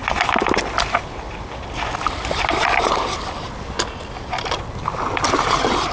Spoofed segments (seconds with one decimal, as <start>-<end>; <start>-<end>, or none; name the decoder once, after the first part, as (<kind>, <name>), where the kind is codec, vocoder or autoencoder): none